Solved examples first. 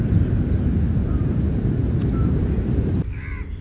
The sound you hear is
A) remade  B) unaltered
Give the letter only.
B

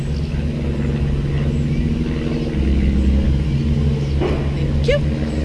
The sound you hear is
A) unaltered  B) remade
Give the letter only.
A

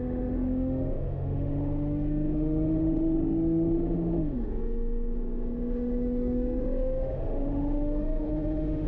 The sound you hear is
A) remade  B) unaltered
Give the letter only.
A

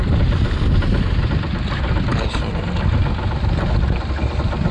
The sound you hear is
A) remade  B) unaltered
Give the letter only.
B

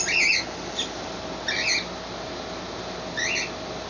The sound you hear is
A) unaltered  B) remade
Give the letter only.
A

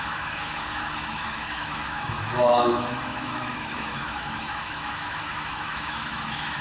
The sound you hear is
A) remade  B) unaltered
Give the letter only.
A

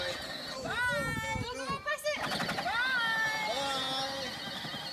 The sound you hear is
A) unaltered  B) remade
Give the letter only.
A